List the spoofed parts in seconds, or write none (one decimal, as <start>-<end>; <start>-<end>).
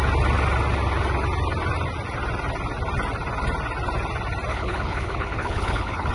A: 4.5-6.1